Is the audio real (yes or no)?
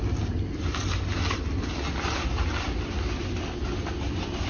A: yes